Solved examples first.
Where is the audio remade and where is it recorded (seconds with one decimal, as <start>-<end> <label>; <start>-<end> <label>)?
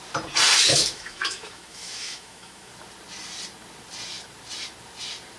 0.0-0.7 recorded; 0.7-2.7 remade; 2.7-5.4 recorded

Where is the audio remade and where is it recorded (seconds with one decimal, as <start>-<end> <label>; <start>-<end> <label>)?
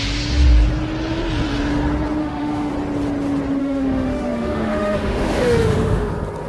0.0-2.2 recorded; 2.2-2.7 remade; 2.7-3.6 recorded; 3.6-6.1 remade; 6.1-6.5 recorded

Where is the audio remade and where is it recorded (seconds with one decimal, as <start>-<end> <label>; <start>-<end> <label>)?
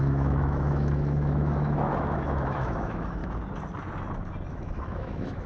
0.0-3.2 remade; 3.2-4.5 recorded; 4.5-5.5 remade